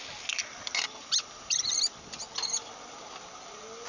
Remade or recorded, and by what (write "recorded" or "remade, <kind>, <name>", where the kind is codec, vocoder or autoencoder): recorded